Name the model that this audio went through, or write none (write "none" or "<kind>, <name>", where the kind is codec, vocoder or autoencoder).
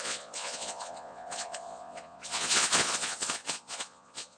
vocoder, Vocos